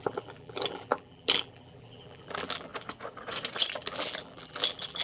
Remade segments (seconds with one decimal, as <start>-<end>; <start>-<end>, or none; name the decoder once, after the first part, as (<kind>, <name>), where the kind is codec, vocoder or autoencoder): 0.0-2.7 (vocoder, BigVGAN v2); 3.7-5.0